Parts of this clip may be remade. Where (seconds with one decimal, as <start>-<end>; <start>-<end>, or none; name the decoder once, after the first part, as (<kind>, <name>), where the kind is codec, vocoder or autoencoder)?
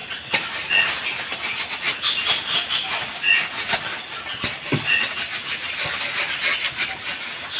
none